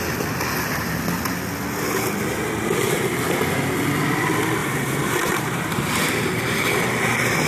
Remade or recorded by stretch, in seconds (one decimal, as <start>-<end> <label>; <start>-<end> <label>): 0.0-4.6 recorded; 4.6-6.1 remade; 6.1-7.5 recorded